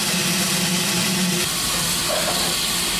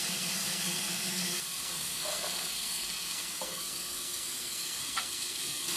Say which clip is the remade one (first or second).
second